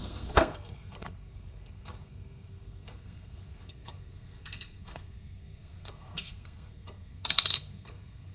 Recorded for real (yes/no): no